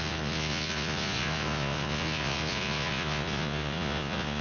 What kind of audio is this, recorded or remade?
remade